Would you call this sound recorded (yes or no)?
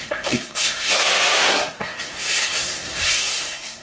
no